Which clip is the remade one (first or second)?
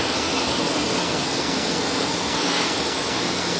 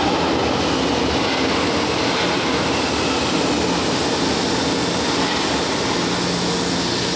first